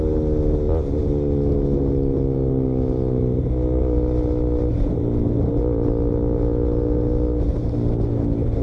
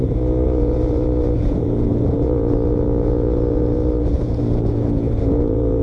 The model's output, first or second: second